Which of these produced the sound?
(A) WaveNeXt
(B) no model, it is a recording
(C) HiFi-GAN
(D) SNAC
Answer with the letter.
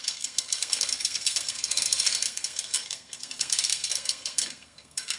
D